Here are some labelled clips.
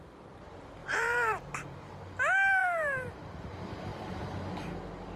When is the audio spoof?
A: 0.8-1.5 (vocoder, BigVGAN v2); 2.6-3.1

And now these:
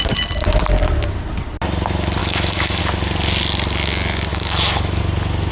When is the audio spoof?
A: 2.2-2.8 (autoencoder, DAC-VAE); 4.3-5.0

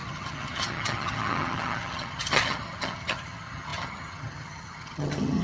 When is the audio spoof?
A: 0.0-5.4 (vocoder, HiFi-GAN)

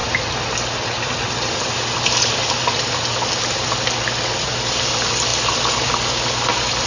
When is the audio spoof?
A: 5.3-5.9 (vocoder, BigVGAN v2)